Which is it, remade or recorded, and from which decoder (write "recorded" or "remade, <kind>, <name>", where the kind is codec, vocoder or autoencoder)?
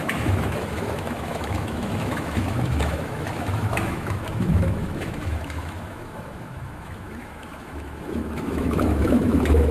remade, autoencoder, DAC-VAE